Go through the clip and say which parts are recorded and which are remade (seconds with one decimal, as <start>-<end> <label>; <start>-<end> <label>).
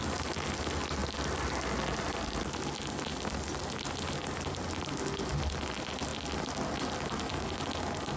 0.0-8.2 recorded